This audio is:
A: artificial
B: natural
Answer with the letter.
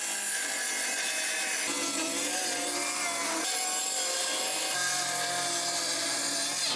B